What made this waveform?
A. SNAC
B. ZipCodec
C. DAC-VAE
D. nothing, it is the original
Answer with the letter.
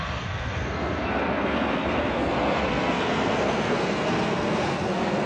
A